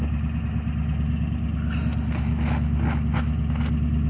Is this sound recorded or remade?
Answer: recorded